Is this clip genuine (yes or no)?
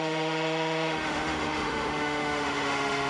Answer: no